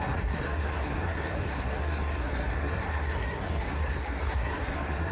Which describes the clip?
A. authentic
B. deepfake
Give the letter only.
B